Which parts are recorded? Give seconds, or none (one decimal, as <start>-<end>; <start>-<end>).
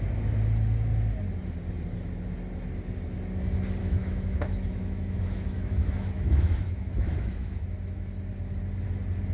0.0-3.8; 7.6-9.3